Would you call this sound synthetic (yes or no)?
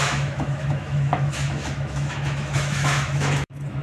yes